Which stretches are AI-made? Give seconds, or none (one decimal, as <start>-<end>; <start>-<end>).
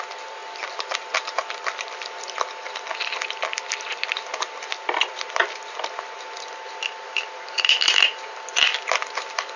none